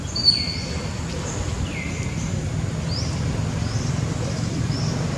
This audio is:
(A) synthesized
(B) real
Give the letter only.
B